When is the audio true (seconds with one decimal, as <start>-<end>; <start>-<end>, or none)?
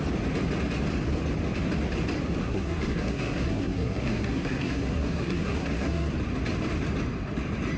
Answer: 0.0-2.4; 6.1-7.8